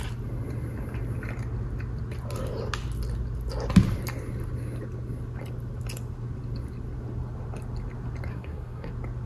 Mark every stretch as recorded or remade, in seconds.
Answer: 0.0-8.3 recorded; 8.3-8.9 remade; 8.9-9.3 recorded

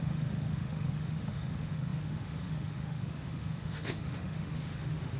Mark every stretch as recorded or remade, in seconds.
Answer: 0.0-5.2 remade

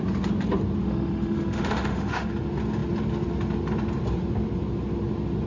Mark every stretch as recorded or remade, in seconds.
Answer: 0.0-0.8 recorded; 0.8-2.3 remade; 2.3-5.5 recorded

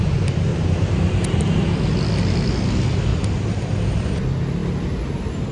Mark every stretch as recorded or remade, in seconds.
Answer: 0.0-0.5 recorded; 0.5-1.4 remade; 1.4-5.5 recorded

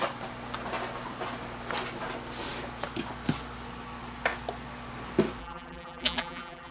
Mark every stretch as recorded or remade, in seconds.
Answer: 0.0-5.4 recorded; 5.4-6.7 remade

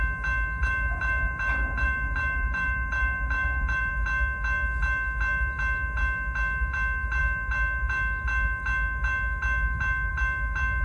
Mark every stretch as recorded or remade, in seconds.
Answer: 0.0-0.6 recorded; 0.6-3.9 remade; 3.9-10.8 recorded

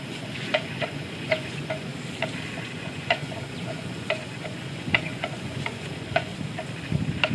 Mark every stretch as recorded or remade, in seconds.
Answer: 0.0-1.9 remade; 1.9-2.6 recorded; 2.6-6.3 remade; 6.3-7.3 recorded

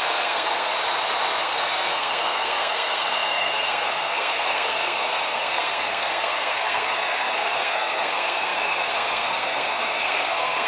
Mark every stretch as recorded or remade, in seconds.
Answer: 0.0-0.7 remade; 0.7-1.4 recorded; 1.4-10.7 remade